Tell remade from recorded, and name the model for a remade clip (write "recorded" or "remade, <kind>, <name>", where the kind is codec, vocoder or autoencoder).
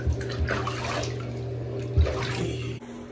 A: recorded